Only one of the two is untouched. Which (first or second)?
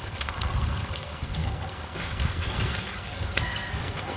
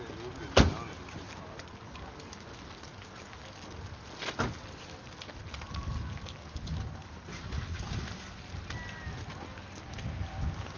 second